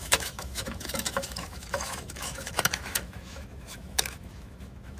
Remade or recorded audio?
remade